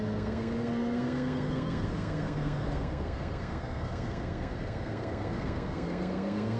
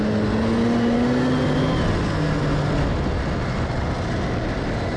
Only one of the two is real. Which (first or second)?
second